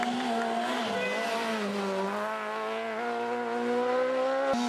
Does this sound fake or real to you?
real